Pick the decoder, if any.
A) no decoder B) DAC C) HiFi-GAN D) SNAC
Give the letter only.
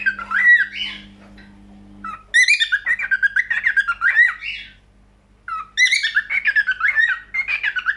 A